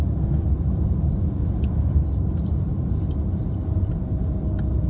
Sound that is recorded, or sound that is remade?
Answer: recorded